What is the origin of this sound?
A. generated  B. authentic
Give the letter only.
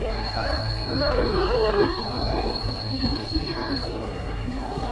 A